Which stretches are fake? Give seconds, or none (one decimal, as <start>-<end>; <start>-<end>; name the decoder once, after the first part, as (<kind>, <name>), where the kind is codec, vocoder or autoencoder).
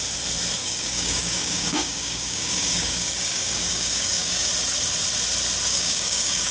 0.6-4.5 (codec, DAC); 5.7-6.5